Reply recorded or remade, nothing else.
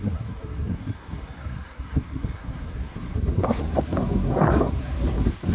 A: remade